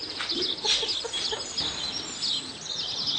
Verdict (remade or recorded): recorded